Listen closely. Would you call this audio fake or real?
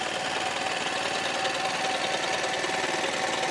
real